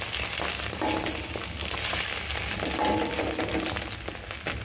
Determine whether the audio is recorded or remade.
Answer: recorded